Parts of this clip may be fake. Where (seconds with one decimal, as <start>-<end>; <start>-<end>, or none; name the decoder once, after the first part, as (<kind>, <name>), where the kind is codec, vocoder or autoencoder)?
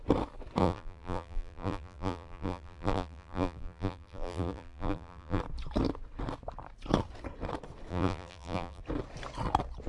0.6-5.4 (vocoder, BigVGAN v2); 7.9-8.8